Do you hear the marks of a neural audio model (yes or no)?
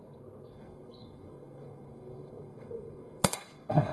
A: yes